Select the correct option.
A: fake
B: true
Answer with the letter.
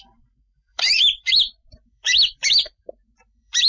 A